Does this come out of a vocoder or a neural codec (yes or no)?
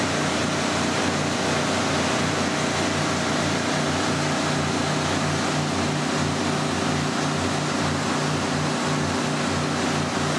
no